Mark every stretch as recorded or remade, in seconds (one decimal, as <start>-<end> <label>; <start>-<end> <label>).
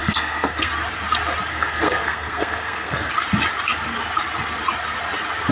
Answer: 0.0-0.7 remade; 0.7-1.5 recorded; 1.5-3.1 remade; 3.1-5.5 recorded